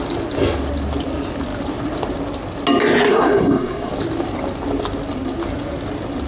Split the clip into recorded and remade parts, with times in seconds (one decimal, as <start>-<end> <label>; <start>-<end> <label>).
0.0-3.1 recorded; 3.1-3.9 remade; 3.9-6.3 recorded